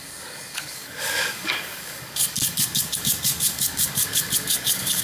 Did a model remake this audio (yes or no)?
yes